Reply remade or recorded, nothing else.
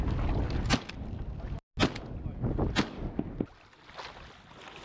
recorded